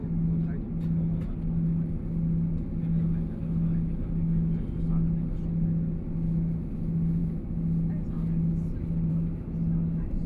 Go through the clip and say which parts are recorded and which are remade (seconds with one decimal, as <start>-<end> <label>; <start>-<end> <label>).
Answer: 0.0-10.3 recorded